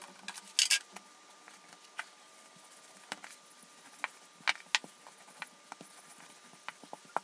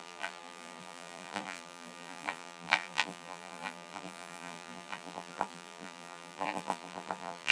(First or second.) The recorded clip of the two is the first